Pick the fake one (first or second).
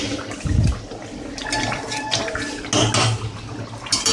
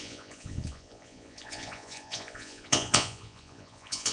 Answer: second